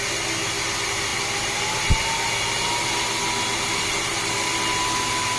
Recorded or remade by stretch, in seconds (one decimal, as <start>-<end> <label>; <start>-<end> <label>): 0.0-5.4 recorded